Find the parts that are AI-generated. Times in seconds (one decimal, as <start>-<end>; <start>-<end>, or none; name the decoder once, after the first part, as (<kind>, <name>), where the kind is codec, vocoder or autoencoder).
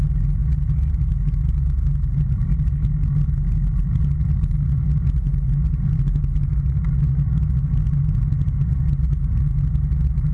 none